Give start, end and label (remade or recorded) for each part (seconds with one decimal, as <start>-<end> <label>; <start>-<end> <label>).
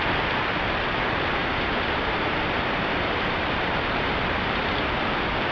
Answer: 0.0-1.4 recorded; 1.4-4.7 remade; 4.7-5.5 recorded